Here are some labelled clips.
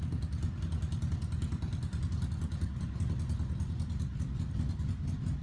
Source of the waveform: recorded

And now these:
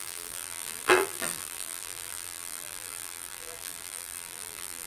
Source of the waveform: remade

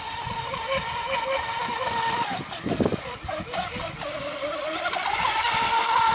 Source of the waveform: recorded